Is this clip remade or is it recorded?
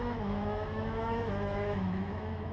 remade